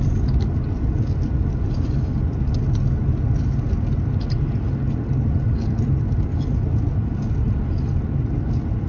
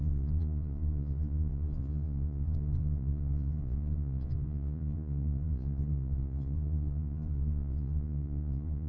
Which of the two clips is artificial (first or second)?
second